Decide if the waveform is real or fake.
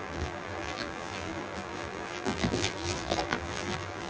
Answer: fake